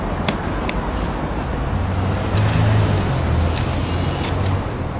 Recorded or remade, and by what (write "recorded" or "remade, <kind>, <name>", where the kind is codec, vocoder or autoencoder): recorded